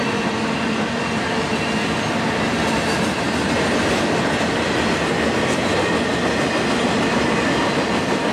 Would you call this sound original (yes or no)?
yes